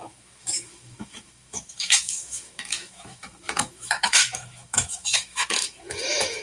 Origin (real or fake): fake